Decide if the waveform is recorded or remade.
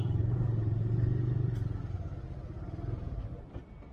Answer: recorded